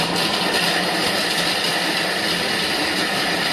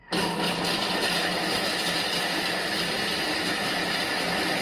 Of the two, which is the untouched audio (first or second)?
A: second